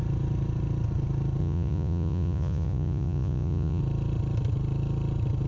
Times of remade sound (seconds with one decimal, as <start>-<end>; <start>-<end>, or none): 1.4-3.8